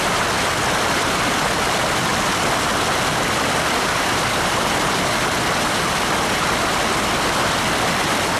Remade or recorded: recorded